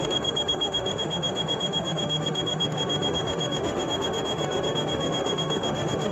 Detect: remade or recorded remade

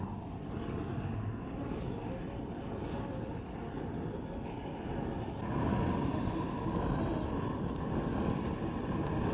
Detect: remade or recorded recorded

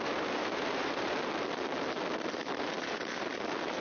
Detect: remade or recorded remade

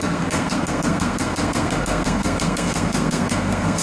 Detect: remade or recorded remade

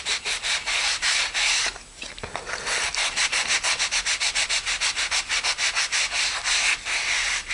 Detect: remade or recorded recorded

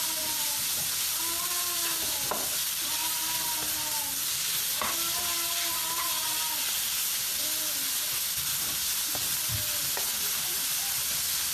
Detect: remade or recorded recorded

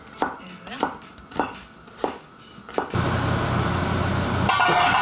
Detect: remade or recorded recorded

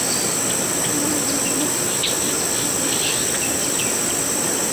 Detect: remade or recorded recorded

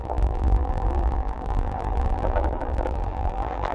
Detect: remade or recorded remade